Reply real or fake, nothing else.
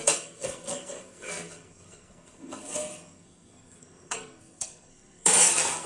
fake